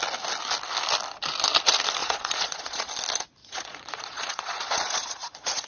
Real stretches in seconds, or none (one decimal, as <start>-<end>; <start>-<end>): 0.0-2.0; 2.9-3.4